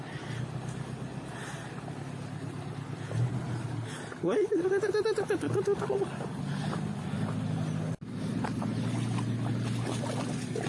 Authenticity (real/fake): real